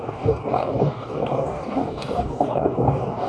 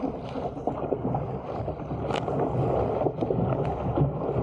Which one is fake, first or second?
first